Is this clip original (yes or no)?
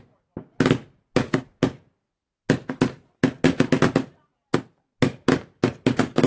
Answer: yes